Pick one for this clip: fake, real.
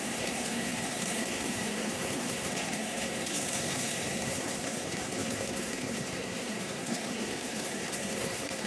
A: fake